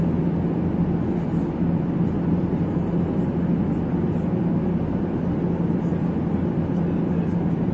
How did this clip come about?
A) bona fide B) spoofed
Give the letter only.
A